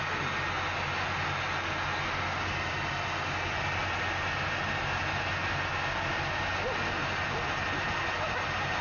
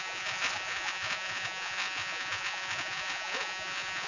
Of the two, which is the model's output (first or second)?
second